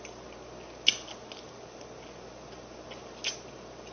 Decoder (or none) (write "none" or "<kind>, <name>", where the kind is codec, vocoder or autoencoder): none